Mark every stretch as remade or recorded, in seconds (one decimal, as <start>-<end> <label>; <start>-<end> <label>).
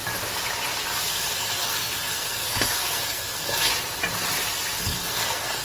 0.0-1.1 recorded; 1.1-3.7 remade; 3.7-4.8 recorded; 4.8-5.6 remade